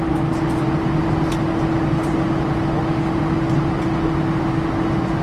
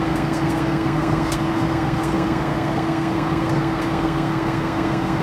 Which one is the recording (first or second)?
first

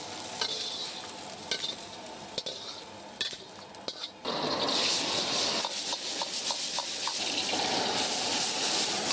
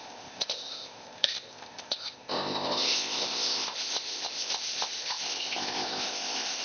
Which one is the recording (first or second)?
first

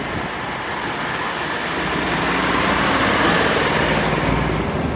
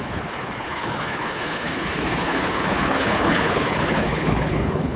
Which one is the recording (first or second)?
first